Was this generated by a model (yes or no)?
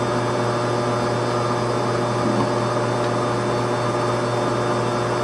no